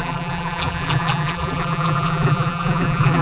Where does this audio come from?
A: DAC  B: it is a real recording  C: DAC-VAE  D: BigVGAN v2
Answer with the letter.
D